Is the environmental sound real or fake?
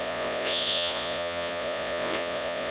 fake